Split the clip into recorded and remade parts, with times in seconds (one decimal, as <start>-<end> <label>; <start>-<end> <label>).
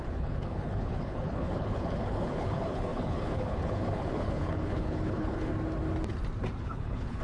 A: 0.0-5.5 remade; 5.5-6.6 recorded; 6.6-7.2 remade